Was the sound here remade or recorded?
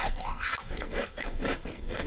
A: remade